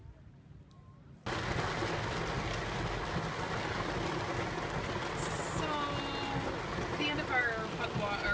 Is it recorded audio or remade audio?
recorded